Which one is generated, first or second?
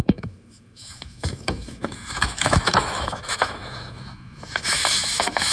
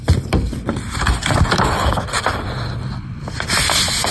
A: first